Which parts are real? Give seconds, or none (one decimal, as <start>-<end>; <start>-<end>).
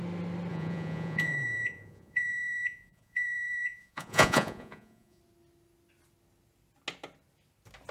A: 0.0-0.5; 5.2-7.9